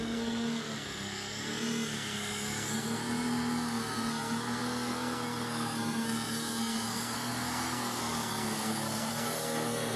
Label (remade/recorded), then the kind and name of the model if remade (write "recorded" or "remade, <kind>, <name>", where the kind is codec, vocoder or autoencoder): remade, codec, SNAC